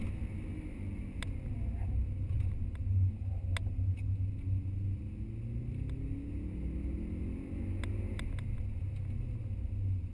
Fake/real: real